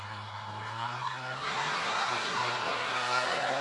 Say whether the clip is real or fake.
fake